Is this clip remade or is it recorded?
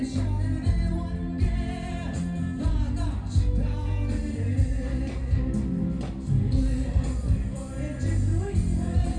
recorded